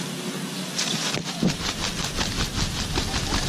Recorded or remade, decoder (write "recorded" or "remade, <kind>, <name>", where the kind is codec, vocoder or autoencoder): recorded